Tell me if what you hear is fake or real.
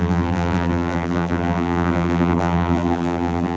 fake